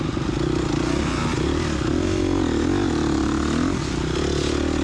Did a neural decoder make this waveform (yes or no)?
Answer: no